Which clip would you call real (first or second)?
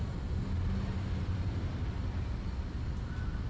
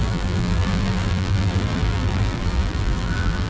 first